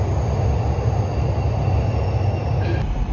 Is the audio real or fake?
real